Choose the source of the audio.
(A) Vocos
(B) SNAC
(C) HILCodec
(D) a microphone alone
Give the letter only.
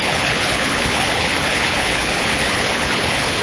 C